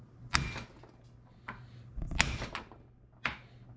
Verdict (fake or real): real